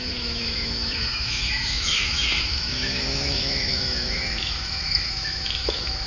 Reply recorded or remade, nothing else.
remade